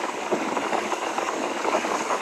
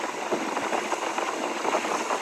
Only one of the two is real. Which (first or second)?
second